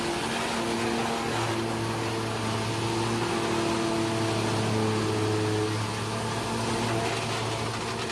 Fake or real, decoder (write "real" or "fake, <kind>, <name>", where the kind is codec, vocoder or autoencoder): real